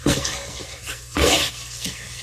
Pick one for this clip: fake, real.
fake